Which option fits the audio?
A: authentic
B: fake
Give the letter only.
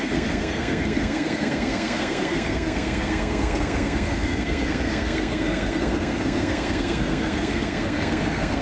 B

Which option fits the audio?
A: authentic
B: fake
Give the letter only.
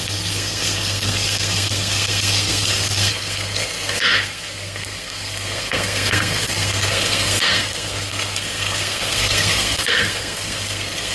B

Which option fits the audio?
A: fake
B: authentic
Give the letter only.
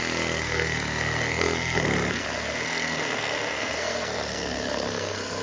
A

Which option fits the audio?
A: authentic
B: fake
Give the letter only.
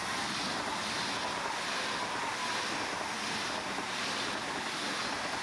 A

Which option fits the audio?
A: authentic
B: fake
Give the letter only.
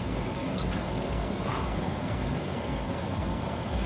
B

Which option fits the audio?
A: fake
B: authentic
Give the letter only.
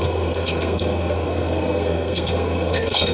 A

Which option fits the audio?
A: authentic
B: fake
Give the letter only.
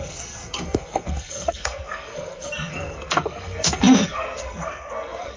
B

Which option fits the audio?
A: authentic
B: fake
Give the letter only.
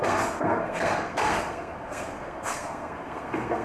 B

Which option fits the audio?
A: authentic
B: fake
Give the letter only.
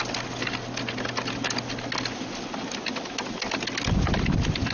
A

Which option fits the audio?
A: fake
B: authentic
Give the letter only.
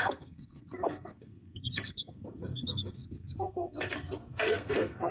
A